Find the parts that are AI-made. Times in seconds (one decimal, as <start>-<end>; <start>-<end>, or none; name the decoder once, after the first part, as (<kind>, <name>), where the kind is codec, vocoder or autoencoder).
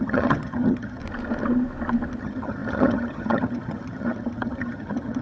0.0-1.0 (vocoder, HiFi-GAN); 2.2-5.2